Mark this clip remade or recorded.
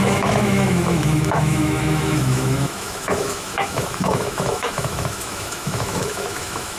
remade